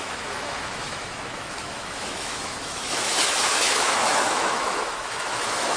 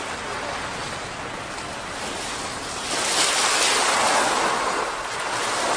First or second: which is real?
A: second